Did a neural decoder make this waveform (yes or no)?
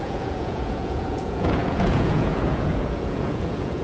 yes